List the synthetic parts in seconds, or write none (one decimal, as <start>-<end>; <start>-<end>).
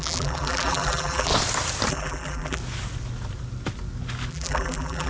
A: 0.0-1.3; 1.9-2.6; 4.3-5.1